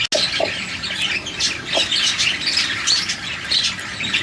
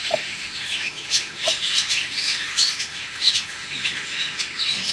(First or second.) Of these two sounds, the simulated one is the second